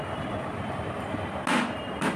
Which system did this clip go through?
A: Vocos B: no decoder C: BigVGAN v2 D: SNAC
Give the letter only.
B